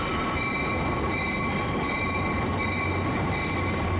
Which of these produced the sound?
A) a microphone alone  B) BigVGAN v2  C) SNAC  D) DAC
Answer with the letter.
A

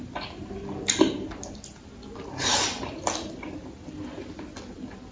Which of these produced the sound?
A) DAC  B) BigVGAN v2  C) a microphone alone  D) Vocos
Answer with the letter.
C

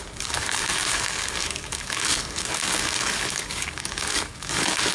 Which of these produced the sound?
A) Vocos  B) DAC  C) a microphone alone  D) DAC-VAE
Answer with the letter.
B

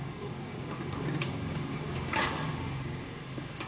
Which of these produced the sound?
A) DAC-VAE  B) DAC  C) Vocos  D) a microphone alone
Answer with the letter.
B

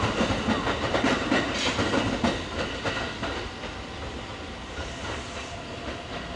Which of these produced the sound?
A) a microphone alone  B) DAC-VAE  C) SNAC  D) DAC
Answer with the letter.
A